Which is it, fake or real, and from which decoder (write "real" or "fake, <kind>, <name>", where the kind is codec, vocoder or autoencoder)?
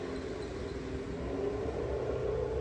real